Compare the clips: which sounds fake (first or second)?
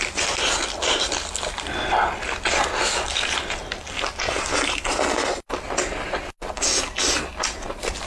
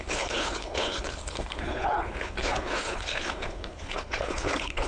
second